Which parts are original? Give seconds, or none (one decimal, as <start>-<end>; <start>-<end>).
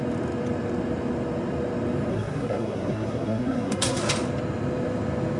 0.0-2.1; 4.0-5.4